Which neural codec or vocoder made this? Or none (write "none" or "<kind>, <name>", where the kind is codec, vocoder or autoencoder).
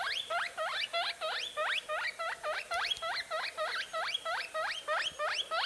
none